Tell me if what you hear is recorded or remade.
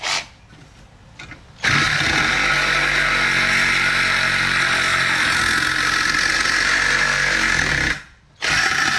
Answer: recorded